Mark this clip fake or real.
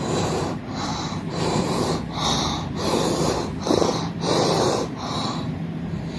fake